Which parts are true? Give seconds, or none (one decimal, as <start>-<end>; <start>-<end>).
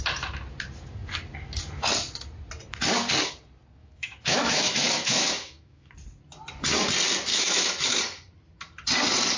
0.0-3.8; 5.9-7.3; 8.0-9.4